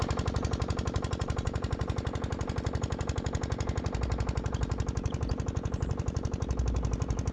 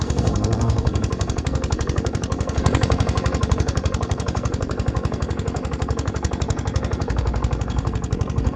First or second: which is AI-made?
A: second